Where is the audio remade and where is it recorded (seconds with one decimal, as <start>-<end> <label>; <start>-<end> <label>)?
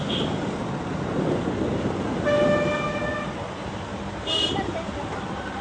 0.0-3.9 recorded; 3.9-4.7 remade; 4.7-5.6 recorded